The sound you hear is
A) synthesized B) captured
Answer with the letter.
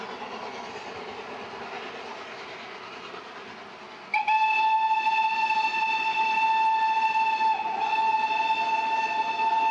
B